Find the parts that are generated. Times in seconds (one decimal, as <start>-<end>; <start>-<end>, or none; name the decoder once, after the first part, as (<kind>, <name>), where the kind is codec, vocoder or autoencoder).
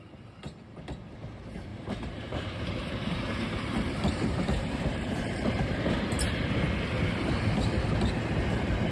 1.7-5.8 (vocoder, BigVGAN v2)